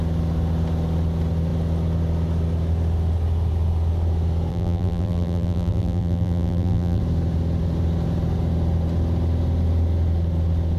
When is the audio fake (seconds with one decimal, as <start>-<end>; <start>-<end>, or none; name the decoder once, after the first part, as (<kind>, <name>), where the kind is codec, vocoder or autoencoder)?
4.5-7.0 (vocoder, BigVGAN v2)